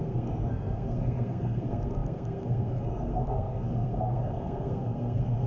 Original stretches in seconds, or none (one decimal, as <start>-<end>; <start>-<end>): none